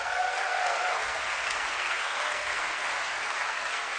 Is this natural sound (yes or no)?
no